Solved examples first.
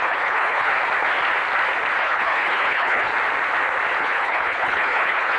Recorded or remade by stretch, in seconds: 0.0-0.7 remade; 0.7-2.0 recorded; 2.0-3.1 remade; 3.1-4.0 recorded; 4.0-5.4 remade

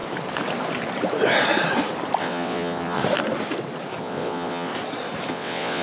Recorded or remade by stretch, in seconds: 0.0-2.2 recorded; 2.2-3.0 remade; 3.0-4.0 recorded; 4.0-4.7 remade; 4.7-5.3 recorded; 5.3-5.8 remade

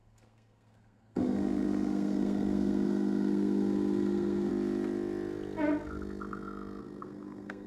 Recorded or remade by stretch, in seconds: 0.0-4.5 remade; 4.5-6.8 recorded; 6.8-7.7 remade

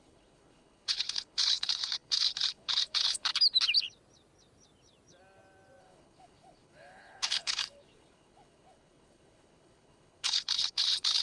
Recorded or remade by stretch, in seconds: 0.0-3.3 remade; 3.3-5.8 recorded; 5.8-11.2 remade